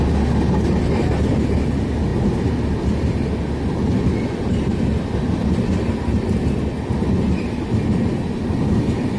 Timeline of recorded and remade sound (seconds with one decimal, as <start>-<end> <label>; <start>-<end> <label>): 0.0-9.2 recorded